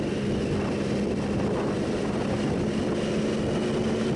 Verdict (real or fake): real